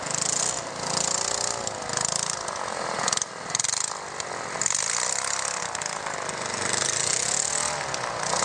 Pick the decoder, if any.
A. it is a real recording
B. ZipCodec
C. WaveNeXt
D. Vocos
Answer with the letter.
A